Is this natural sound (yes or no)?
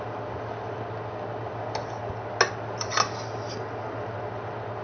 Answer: yes